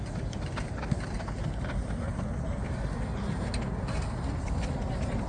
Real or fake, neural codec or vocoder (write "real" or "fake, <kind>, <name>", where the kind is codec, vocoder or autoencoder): real